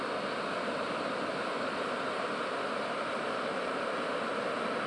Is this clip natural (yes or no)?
yes